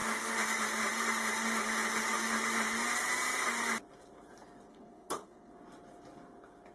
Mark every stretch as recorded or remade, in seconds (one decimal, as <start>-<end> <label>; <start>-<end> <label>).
0.0-4.7 recorded; 4.7-5.5 remade; 5.5-6.7 recorded